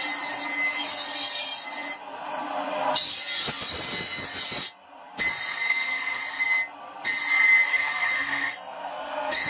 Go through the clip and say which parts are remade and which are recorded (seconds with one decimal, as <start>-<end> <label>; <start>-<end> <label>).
0.0-5.5 recorded; 5.5-6.2 remade; 6.2-7.7 recorded; 7.7-9.5 remade